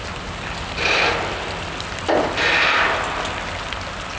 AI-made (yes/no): no